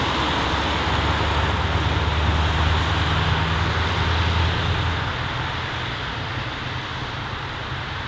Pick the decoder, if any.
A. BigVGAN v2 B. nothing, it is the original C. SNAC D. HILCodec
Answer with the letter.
B